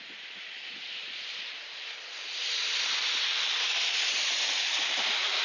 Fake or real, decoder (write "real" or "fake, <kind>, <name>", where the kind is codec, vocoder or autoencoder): real